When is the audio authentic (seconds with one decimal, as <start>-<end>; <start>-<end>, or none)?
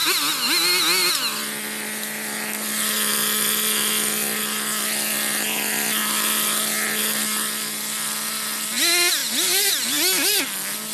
0.0-10.9